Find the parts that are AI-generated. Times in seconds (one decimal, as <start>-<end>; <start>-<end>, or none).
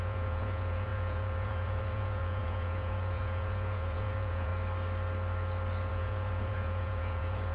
0.0-4.5; 5.9-7.5